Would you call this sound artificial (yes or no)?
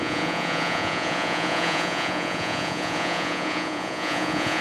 yes